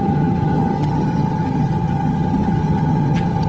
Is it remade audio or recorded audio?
remade